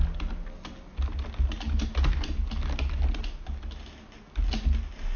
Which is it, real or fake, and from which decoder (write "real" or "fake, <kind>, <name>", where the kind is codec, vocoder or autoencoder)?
real